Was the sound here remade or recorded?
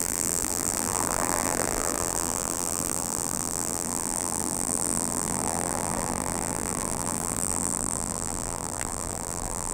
remade